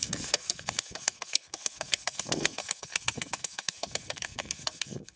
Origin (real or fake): fake